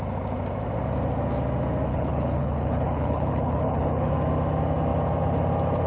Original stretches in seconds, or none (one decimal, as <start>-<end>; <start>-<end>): 0.0-1.9; 4.1-5.9